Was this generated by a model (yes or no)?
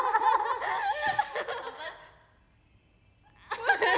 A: no